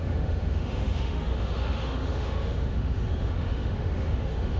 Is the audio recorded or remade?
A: remade